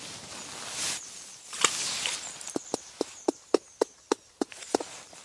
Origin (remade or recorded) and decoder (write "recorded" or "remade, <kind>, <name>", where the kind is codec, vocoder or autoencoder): recorded